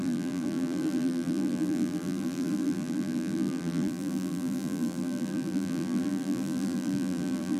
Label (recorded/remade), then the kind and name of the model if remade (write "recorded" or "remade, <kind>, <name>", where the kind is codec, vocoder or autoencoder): remade, vocoder, BigVGAN v2